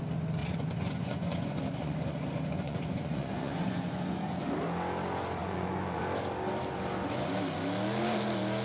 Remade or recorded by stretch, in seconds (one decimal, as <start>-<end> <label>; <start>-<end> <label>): 0.0-0.4 recorded; 0.4-4.5 remade; 4.5-5.4 recorded; 5.4-6.0 remade; 6.0-8.6 recorded